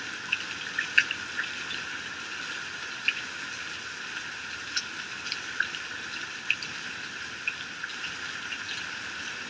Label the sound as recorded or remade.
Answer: recorded